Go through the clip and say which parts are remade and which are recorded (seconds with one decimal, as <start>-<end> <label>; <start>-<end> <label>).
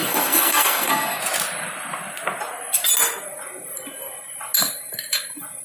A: 0.0-1.2 remade; 1.2-5.6 recorded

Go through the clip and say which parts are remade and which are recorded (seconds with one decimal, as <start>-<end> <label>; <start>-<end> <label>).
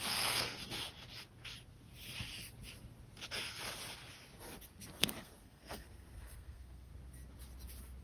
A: 0.0-0.6 remade; 0.6-5.0 recorded; 5.0-6.9 remade; 6.9-8.0 recorded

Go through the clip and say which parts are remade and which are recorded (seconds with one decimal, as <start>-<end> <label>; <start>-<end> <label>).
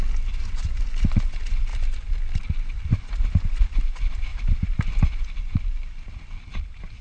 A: 0.0-7.0 recorded